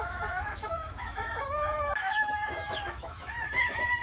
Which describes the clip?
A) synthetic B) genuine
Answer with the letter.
A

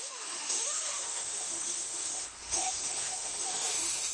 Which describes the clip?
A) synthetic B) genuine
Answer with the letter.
A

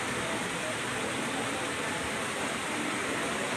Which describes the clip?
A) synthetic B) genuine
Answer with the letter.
B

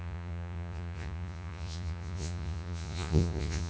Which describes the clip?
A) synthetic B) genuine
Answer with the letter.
A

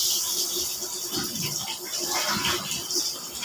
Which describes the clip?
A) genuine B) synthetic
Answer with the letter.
A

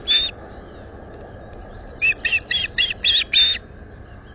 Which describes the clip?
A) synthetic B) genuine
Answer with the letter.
B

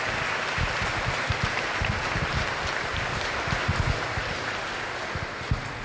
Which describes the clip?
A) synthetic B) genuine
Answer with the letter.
B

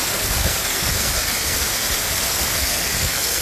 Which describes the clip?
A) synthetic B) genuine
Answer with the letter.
A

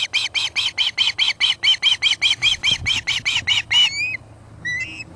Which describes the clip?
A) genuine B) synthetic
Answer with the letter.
A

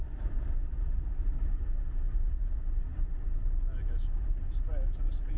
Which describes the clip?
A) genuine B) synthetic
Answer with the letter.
A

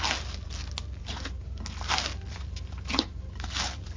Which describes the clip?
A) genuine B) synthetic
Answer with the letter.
A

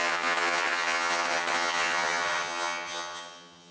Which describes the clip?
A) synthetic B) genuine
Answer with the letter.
A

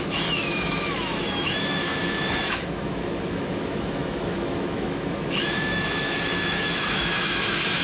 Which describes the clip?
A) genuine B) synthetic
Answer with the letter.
B